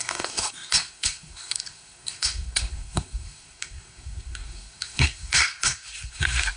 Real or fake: fake